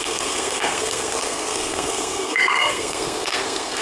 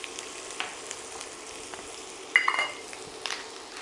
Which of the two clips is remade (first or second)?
first